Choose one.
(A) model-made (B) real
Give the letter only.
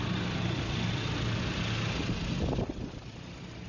B